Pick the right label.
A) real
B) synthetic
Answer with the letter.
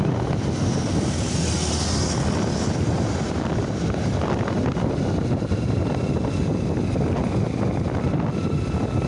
A